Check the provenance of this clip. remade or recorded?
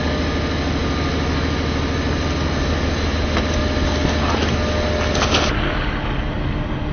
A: recorded